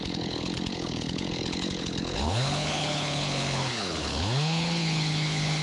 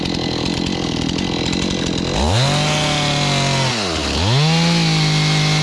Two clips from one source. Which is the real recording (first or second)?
second